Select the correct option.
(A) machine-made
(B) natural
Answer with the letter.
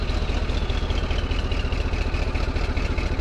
B